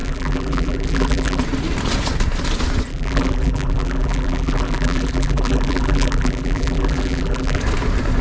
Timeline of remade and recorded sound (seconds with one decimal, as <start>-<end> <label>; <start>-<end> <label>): 0.0-1.4 remade; 1.4-2.9 recorded; 2.9-7.6 remade; 7.6-8.2 recorded

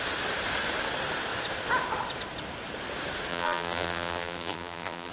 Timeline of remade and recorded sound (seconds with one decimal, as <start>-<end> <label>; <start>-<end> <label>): 0.0-3.3 recorded; 3.3-5.1 remade

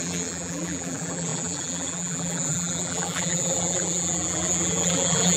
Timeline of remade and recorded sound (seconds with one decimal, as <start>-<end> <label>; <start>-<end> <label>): 0.0-5.4 remade